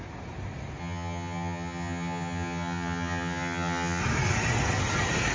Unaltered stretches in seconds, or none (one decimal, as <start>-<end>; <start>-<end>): 0.0-0.8; 4.0-5.3